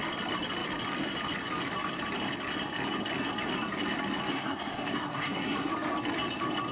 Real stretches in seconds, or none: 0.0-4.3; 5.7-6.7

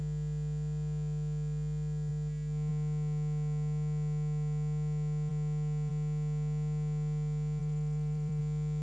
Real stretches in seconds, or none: 0.0-7.6; 8.4-8.8